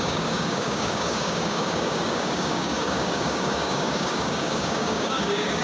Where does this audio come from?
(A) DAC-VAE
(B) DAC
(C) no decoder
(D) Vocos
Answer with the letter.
B